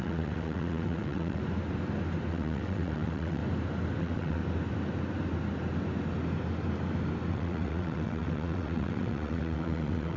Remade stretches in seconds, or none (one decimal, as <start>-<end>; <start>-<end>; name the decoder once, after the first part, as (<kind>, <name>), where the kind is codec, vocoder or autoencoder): 0.0-1.4 (vocoder, WaveNeXt); 2.3-3.4; 4.0-4.4; 7.3-10.2